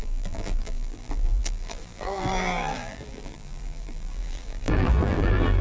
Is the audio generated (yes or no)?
yes